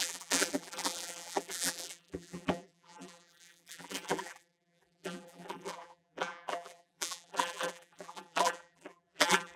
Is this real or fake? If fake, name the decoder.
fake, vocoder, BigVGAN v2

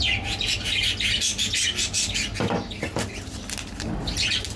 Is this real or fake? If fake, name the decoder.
real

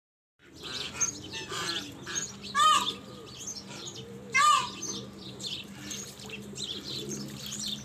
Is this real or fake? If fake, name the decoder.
fake, vocoder, BigVGAN v2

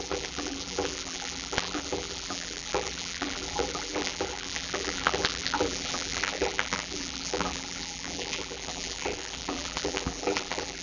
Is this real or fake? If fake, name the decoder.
fake, vocoder, BigVGAN v2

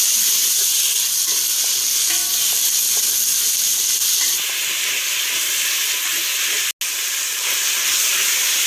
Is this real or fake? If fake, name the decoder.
real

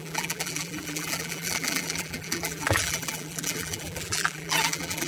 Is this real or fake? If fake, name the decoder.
fake, vocoder, BigVGAN v2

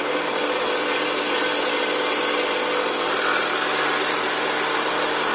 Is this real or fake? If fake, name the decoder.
real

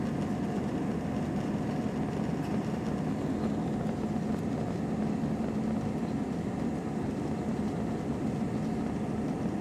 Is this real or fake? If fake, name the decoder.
real